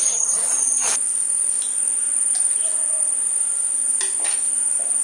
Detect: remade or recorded recorded